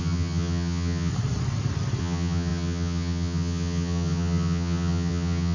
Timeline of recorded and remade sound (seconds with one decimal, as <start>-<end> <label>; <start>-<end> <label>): 0.0-1.1 remade; 1.1-2.0 recorded; 2.0-5.5 remade